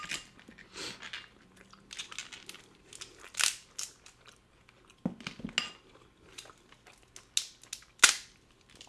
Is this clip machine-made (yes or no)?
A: no